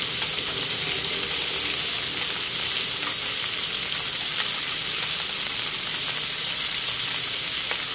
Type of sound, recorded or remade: recorded